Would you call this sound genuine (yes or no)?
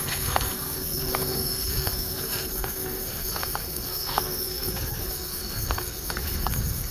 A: no